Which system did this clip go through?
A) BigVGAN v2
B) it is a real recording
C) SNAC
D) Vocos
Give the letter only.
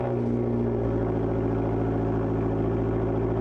B